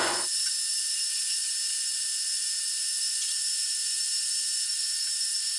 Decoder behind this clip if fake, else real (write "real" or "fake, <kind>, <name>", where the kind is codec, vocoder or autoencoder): fake, vocoder, Vocos